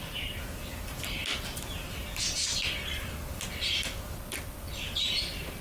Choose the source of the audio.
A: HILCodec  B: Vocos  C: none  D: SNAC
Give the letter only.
C